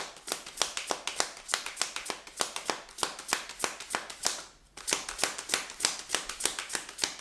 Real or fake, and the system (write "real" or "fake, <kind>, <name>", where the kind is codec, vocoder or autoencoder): real